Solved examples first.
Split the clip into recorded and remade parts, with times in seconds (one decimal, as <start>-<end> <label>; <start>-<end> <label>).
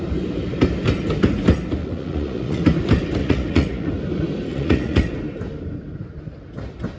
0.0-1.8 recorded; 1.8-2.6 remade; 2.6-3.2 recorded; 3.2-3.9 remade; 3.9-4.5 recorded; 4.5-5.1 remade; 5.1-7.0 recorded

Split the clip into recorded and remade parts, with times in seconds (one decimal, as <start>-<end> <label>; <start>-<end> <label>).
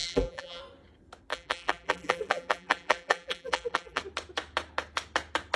0.0-0.6 remade; 0.6-1.3 recorded; 1.3-4.0 remade; 4.0-5.6 recorded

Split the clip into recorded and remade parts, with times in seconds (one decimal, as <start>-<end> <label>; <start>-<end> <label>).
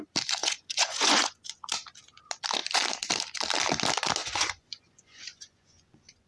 0.0-0.4 recorded; 0.4-1.6 remade; 1.6-4.2 recorded; 4.2-6.3 remade